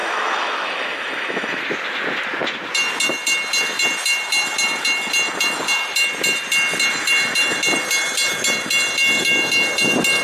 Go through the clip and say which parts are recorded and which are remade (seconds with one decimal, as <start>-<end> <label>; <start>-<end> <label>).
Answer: 0.0-1.6 remade; 1.6-10.2 recorded